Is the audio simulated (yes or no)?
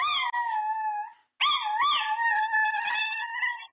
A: no